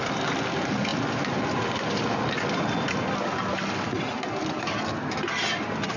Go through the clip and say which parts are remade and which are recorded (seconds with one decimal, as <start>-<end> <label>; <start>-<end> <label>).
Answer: 0.0-6.0 recorded